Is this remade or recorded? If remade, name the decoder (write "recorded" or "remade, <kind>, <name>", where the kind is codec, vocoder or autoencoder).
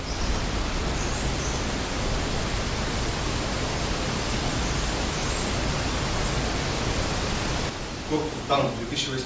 recorded